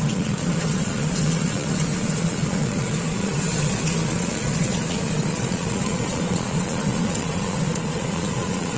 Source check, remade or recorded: remade